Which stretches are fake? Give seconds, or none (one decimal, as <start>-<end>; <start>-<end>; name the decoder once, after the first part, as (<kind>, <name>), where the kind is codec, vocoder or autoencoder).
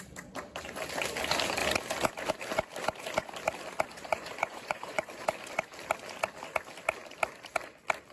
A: 3.9-5.1 (vocoder, Vocos)